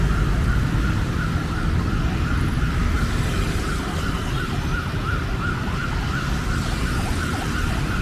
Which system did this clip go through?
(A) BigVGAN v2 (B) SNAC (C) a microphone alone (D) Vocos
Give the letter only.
C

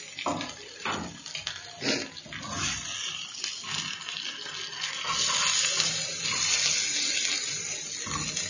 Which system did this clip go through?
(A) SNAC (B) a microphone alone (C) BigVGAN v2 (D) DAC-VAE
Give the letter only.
B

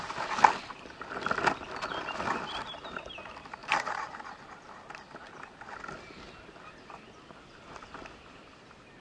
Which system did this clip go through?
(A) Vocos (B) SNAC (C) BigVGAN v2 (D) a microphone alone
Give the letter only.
D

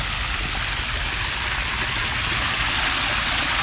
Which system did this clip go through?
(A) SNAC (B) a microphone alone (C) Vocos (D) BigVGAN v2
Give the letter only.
B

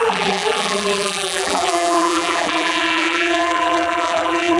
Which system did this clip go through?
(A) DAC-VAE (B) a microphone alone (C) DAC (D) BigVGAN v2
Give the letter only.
D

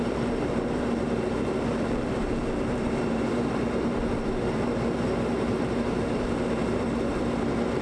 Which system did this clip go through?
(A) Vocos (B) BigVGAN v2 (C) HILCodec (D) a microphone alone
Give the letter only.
B